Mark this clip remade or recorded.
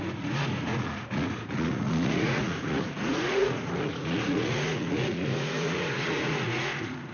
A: remade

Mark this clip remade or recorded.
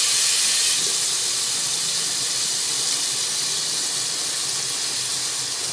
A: recorded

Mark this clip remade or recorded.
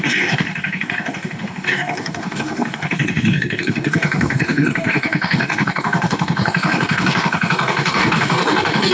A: remade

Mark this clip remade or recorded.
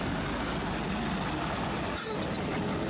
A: recorded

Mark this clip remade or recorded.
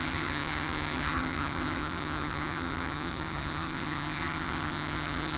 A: remade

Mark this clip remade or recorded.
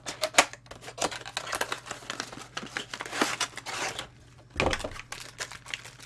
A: recorded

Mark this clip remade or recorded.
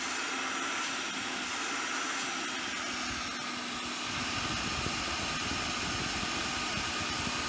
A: recorded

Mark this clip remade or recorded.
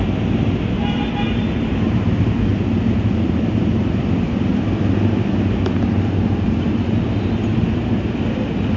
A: recorded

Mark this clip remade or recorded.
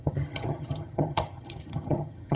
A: remade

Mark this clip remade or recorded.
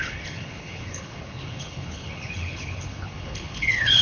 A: remade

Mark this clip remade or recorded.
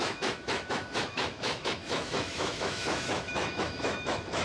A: remade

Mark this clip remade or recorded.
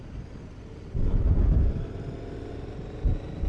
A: recorded